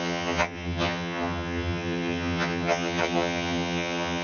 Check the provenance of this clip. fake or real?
fake